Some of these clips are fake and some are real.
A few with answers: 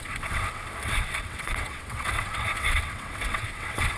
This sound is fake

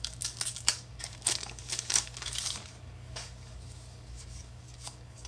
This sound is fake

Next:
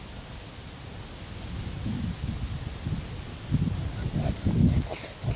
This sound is real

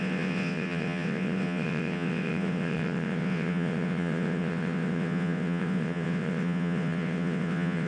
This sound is fake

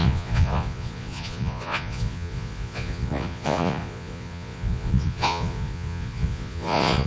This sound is fake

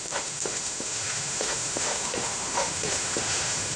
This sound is fake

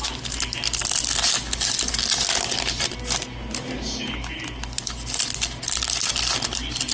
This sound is real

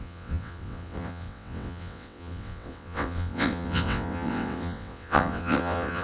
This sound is fake